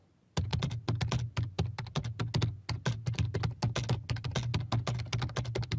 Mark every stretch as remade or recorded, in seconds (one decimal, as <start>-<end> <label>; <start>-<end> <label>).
0.0-5.8 recorded